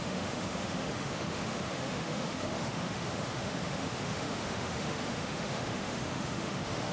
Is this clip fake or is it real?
fake